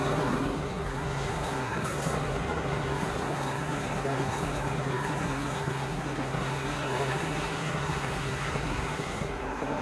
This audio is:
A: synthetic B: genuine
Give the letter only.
A